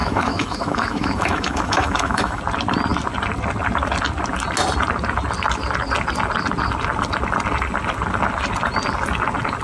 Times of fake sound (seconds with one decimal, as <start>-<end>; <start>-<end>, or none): 0.0-2.4